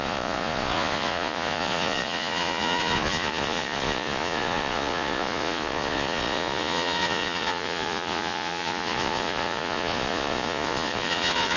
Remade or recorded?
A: remade